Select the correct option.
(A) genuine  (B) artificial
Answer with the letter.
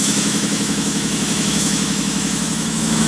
B